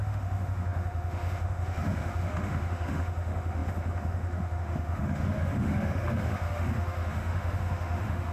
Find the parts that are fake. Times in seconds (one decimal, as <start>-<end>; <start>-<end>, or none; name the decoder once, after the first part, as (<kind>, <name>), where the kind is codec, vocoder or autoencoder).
0.0-8.3 (autoencoder, DAC-VAE)